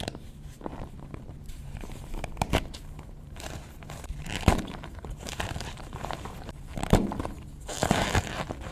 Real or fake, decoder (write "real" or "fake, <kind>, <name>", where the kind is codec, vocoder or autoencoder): fake, vocoder, BigVGAN v2